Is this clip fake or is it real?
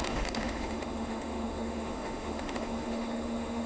fake